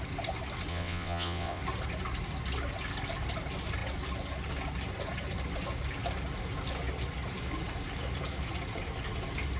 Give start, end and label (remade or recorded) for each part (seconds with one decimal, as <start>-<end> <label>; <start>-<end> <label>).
0.0-0.7 recorded; 0.7-1.6 remade; 1.6-9.6 recorded